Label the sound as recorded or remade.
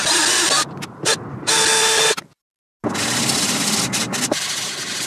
recorded